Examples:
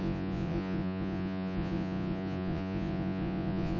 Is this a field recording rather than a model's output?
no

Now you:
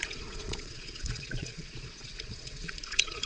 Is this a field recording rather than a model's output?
no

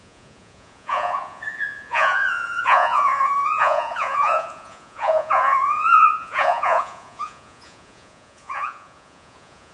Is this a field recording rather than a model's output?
no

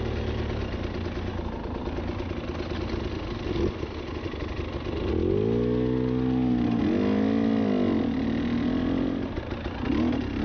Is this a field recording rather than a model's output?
yes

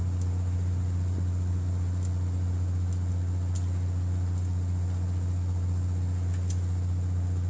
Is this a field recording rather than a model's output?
yes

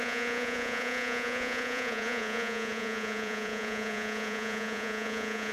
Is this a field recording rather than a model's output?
no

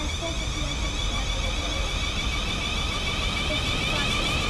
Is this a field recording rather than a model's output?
yes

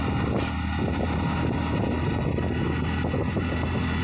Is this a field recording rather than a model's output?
yes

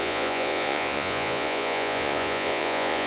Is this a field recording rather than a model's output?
no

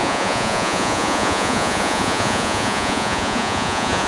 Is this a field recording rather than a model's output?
no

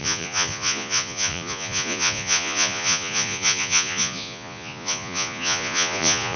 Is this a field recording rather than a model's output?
no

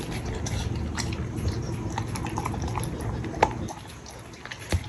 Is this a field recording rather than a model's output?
yes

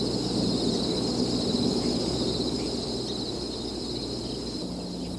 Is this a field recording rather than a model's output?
yes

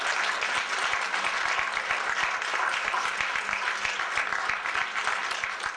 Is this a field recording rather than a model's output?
yes